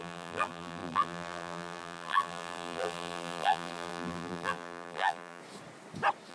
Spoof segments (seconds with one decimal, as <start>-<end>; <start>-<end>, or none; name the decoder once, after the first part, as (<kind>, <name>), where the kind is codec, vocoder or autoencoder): 0.0-5.4 (vocoder, BigVGAN v2)